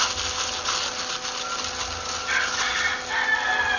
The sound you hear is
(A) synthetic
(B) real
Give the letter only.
B